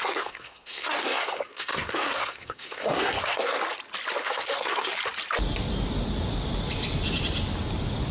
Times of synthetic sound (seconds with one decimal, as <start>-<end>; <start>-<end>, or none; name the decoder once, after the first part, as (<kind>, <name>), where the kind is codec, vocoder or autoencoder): 0.0-3.6 (codec, SNAC); 4.2-4.9